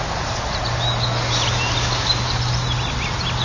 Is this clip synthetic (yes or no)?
no